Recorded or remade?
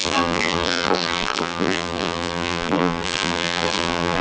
remade